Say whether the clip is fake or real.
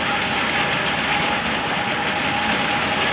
real